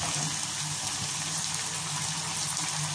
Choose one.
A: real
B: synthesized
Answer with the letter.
A